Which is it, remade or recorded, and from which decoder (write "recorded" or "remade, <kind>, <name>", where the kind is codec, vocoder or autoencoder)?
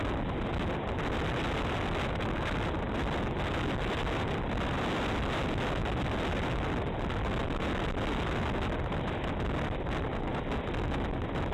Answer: recorded